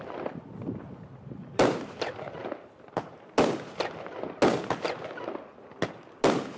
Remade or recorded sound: recorded